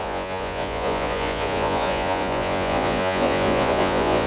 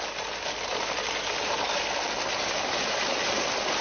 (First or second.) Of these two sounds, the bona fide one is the second